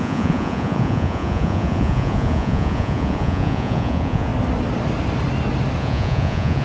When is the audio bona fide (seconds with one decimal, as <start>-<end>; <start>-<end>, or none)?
4.3-5.8